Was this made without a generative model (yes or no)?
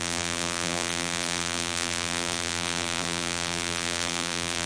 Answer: no